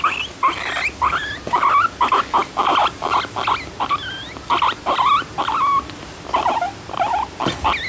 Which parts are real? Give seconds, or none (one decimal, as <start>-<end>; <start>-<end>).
0.0-7.9